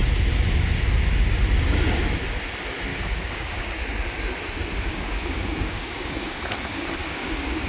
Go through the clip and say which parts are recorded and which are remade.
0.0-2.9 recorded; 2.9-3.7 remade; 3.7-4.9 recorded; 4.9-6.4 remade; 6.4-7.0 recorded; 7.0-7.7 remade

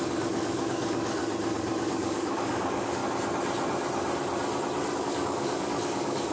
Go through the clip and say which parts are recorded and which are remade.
0.0-1.2 remade; 1.2-1.8 recorded; 1.8-3.0 remade; 3.0-5.0 recorded; 5.0-6.3 remade

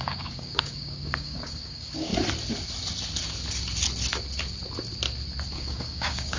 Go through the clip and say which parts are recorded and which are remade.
0.0-2.1 remade; 2.1-5.5 recorded; 5.5-6.4 remade

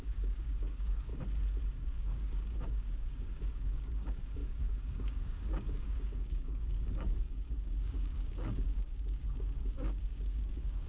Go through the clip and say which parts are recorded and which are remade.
0.0-1.1 remade; 1.1-1.7 recorded; 1.7-10.9 remade

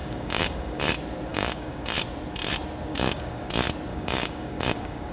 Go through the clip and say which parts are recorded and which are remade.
0.0-0.8 remade; 0.8-1.3 recorded; 1.3-1.9 remade; 1.9-2.9 recorded; 2.9-3.5 remade; 3.5-3.9 recorded; 3.9-5.1 remade